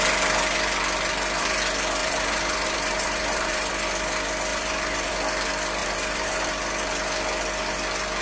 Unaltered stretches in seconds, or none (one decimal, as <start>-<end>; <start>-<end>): 0.0-2.0; 3.7-4.5; 5.1-5.8; 6.5-8.2